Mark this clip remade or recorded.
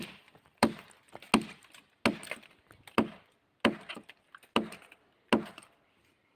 recorded